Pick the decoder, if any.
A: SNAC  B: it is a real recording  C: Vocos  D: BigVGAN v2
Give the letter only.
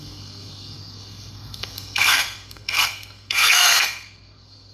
A